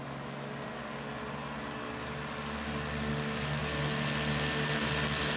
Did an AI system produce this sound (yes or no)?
no